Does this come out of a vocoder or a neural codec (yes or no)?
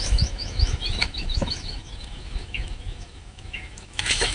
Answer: yes